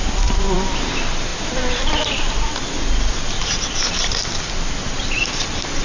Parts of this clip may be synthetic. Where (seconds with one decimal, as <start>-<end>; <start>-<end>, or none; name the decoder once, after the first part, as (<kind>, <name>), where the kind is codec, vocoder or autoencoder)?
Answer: none